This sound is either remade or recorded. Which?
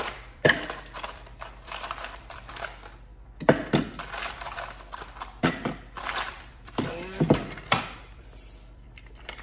remade